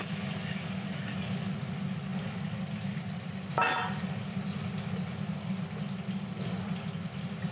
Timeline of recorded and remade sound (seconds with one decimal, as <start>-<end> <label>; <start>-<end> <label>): 0.0-7.5 recorded